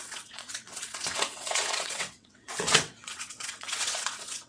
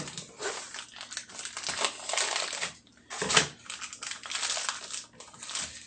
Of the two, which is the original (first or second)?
second